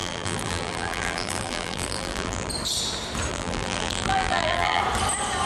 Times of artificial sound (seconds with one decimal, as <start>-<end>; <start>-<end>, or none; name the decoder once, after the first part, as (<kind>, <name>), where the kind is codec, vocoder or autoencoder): 0.0-2.5 (vocoder, BigVGAN v2); 3.3-4.8